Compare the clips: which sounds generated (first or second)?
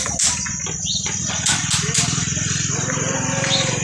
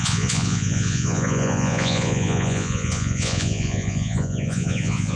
second